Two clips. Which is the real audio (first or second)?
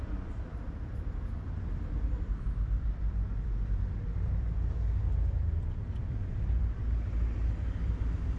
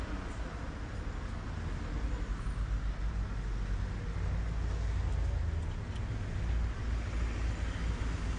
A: second